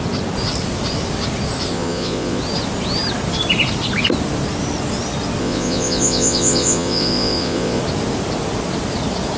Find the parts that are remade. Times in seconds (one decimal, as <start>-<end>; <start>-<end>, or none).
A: 1.7-2.4; 5.4-7.8